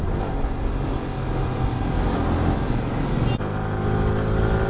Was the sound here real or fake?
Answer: real